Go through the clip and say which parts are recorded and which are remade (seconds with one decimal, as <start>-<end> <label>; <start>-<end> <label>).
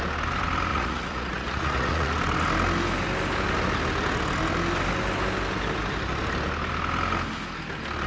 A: 0.0-0.7 recorded; 0.7-2.1 remade; 2.1-8.1 recorded